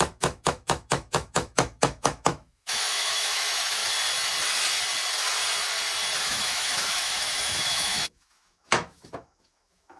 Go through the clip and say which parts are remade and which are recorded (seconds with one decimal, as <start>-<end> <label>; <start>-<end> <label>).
0.0-3.8 remade; 3.8-6.2 recorded; 6.2-10.0 remade